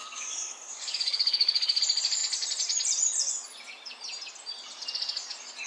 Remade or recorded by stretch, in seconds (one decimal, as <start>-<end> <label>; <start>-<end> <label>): 0.0-1.8 remade; 1.8-5.7 recorded